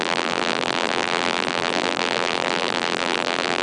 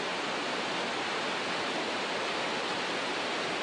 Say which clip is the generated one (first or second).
first